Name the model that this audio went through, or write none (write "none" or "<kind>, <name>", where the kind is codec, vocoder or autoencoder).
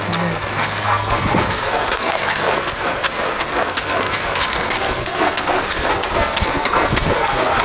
codec, SNAC